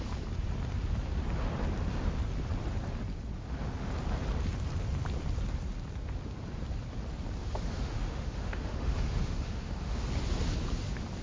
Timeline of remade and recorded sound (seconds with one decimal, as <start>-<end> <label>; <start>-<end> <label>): 0.0-7.4 recorded; 7.4-10.0 remade; 10.0-11.2 recorded